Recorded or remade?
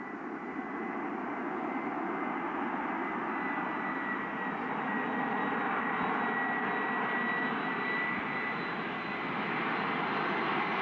recorded